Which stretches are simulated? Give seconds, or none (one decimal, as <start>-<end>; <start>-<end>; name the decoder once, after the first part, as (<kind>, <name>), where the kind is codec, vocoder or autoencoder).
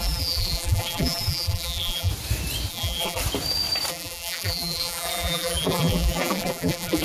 0.0-2.1 (vocoder, BigVGAN v2); 2.7-3.2; 3.9-7.0